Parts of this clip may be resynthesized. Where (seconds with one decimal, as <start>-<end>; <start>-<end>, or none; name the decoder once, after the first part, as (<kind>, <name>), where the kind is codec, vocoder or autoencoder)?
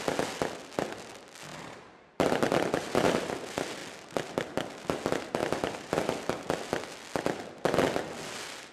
1.5-3.3 (vocoder, BigVGAN v2); 5.4-5.9